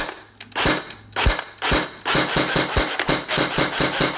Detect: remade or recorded recorded